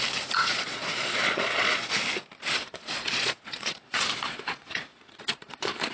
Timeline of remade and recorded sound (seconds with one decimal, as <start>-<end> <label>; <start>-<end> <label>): 0.0-0.4 recorded; 0.4-1.9 remade; 1.9-2.4 recorded; 2.4-5.9 remade